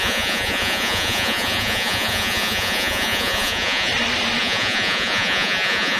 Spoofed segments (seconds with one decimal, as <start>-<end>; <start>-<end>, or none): 0.0-3.9; 4.4-6.0